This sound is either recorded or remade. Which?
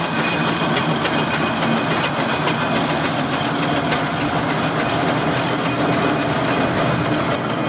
recorded